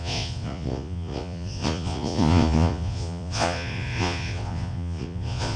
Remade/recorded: remade